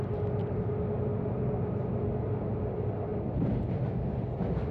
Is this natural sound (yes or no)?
yes